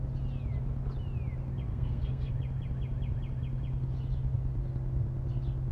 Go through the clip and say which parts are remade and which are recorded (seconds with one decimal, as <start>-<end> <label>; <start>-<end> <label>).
0.0-1.7 recorded; 1.7-2.3 remade; 2.3-5.7 recorded